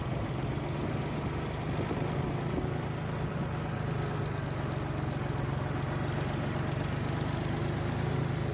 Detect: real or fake real